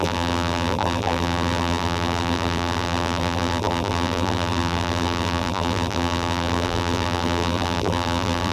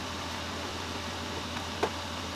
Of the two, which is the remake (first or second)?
first